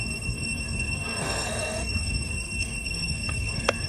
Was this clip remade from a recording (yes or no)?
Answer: yes